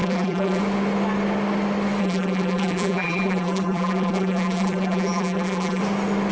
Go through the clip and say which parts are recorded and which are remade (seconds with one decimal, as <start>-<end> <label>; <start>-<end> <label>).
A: 0.0-0.6 remade; 0.6-2.0 recorded; 2.0-5.8 remade; 5.8-6.3 recorded